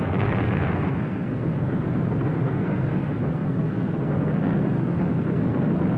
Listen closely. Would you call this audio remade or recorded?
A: remade